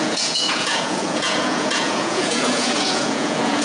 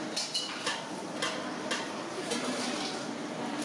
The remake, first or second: first